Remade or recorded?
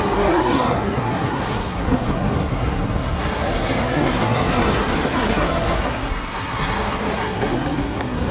remade